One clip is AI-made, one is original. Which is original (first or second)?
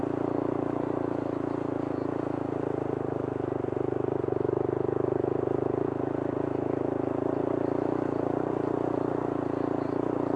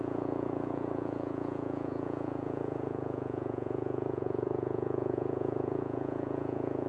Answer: first